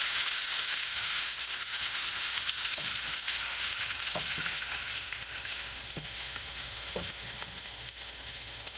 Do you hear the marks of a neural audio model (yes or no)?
yes